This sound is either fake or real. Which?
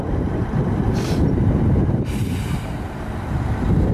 fake